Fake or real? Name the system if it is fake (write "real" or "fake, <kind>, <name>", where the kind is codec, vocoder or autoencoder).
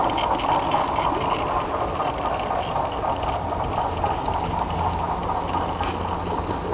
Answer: real